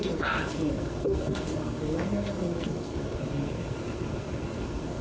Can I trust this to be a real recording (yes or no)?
no